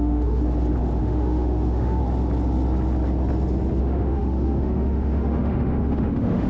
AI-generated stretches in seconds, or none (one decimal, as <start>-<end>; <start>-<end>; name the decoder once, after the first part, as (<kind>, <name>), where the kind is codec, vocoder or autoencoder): 0.0-0.4 (autoencoder, DAC-VAE); 1.0-2.0; 3.8-6.5